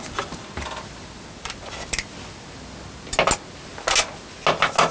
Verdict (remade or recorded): recorded